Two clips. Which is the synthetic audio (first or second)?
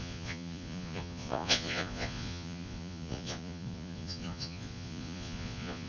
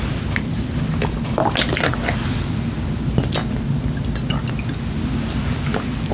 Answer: first